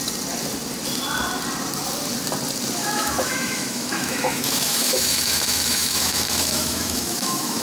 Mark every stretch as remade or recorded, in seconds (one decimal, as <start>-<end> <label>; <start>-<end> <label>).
0.0-2.8 recorded; 2.8-7.6 remade